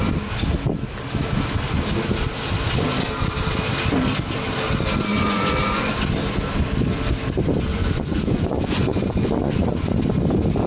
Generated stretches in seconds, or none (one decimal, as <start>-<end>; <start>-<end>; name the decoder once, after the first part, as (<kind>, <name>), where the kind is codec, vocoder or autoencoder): 5.1-5.9 (vocoder, Vocos); 7.7-9.9